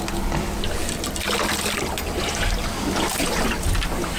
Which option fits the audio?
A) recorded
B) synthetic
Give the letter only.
A